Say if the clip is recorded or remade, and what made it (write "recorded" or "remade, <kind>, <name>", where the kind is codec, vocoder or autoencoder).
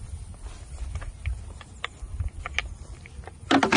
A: recorded